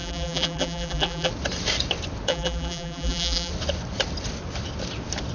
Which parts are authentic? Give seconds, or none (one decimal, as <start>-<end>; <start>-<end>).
1.3-2.3; 3.5-5.3